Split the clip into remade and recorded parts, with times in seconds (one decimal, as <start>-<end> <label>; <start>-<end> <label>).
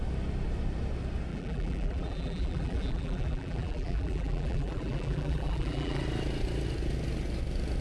0.0-1.3 recorded; 1.3-6.0 remade; 6.0-7.8 recorded